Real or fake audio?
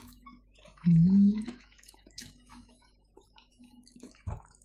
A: fake